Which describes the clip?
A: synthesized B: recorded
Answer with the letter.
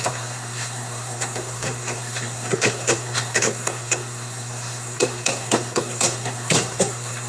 A